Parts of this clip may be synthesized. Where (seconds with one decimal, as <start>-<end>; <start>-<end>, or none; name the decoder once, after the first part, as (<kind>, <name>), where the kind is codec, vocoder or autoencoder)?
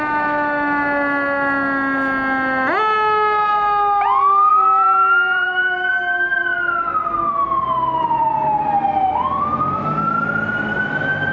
4.5-5.9 (vocoder, BigVGAN v2)